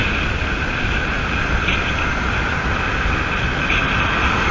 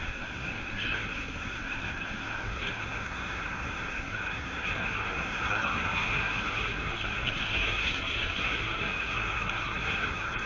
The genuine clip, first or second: first